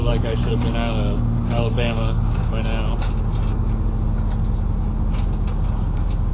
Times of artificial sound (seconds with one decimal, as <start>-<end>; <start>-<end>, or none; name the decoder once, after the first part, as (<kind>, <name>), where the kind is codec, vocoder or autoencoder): 0.0-2.4 (codec, DAC)